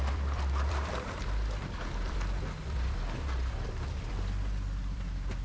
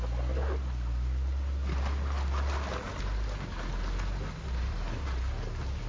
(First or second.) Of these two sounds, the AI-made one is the first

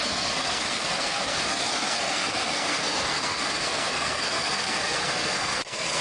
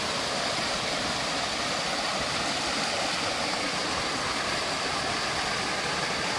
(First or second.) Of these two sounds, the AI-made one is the first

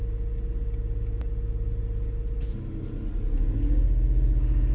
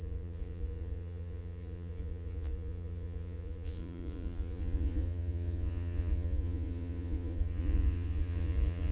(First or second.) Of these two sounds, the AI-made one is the second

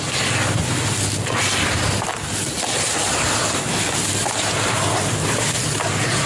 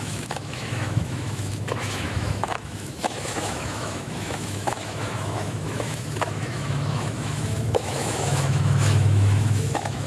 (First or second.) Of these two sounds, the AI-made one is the second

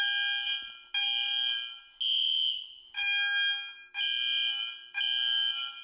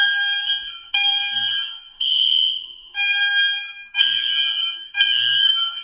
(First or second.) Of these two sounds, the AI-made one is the second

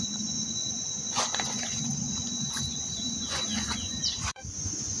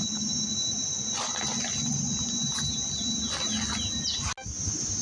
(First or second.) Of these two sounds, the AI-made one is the first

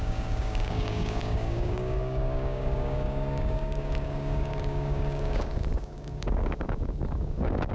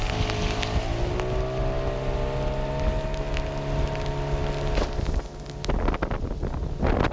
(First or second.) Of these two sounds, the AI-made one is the first